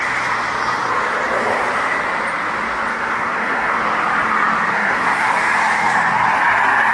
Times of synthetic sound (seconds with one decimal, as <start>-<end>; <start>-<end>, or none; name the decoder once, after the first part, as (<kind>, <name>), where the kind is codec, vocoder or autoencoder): 2.9-3.8 (codec, SNAC); 4.7-5.3